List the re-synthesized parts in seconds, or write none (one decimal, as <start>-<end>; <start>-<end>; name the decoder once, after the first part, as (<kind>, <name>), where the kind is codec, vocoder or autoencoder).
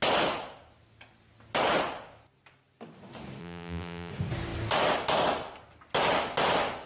3.4-4.1 (vocoder, BigVGAN v2)